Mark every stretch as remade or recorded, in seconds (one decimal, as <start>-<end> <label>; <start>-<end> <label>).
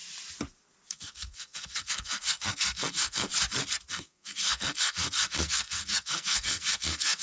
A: 0.0-0.9 recorded; 0.9-3.3 remade; 3.3-3.9 recorded; 3.9-7.2 remade